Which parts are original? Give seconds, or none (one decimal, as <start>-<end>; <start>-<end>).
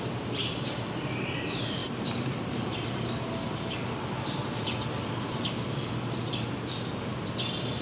0.0-1.8; 3.6-7.8